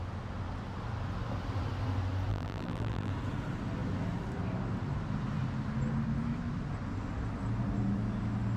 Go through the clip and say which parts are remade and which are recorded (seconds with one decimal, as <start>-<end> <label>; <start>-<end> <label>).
0.0-2.3 recorded; 2.3-3.1 remade; 3.1-8.6 recorded